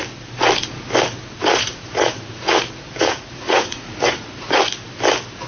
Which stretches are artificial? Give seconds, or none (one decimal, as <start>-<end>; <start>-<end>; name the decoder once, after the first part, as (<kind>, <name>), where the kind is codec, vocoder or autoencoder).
1.5-4.6 (vocoder, Vocos)